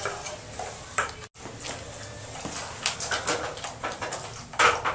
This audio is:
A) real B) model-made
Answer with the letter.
A